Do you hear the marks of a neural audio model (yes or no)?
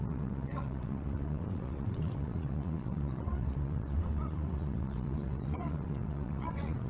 yes